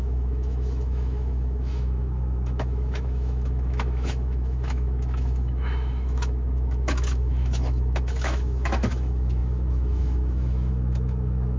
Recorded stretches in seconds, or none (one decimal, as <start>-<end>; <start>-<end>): none